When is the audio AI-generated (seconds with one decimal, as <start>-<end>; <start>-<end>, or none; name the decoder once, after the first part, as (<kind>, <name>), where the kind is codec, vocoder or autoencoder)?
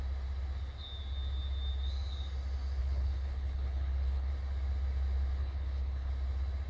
2.8-4.3 (codec, HILCodec); 5.4-6.1